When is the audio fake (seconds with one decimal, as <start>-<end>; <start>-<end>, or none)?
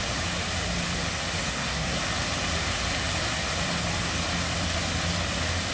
1.4-2.0